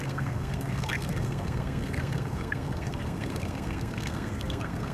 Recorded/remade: remade